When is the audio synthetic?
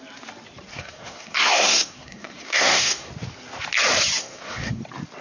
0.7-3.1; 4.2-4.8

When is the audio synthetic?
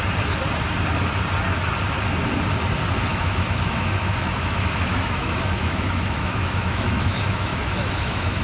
3.1-8.4